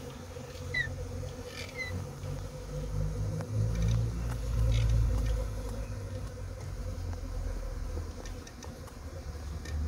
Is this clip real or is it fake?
real